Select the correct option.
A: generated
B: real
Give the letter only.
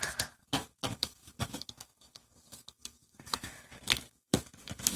A